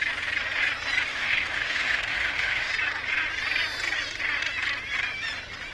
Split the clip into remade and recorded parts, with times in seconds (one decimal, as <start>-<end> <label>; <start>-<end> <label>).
0.0-1.1 recorded; 1.1-2.7 remade; 2.7-5.7 recorded